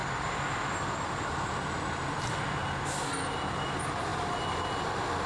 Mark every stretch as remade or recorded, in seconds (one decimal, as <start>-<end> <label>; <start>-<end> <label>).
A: 0.0-5.3 recorded